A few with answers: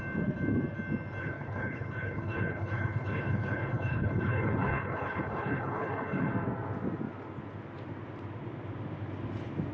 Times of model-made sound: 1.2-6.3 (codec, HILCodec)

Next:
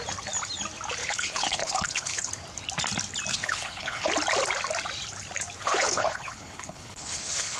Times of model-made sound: 1.0-2.3 (codec, HILCodec); 3.3-4.1; 5.6-7.6

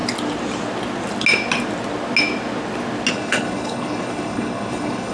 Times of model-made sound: 3.1-5.1 (codec, HILCodec)

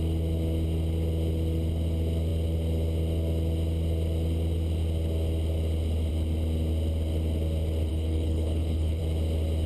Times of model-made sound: 7.9-9.0 (codec, HILCodec)

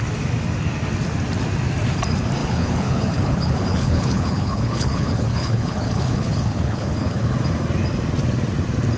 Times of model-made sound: 2.4-7.3 (codec, HILCodec)